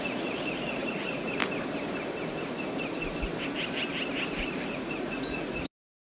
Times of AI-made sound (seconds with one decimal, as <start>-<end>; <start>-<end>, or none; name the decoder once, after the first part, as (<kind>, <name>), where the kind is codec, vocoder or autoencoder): 0.0-1.4 (vocoder, Vocos); 4.4-6.1